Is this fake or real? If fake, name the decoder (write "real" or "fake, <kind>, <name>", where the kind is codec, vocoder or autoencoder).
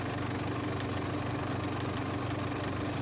real